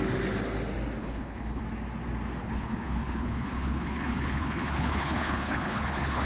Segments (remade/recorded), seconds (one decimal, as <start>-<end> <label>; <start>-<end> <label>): 0.0-1.0 recorded; 1.0-1.6 remade; 1.6-2.4 recorded; 2.4-6.3 remade